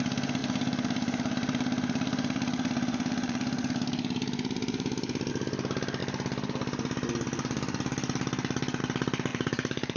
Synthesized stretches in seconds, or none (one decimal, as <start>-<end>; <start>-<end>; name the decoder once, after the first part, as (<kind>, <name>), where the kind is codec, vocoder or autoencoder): 0.4-5.3 (vocoder, BigVGAN v2); 9.3-10.0